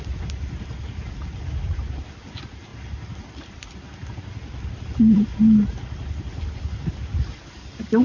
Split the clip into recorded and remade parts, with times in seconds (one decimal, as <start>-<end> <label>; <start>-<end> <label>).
0.0-8.0 recorded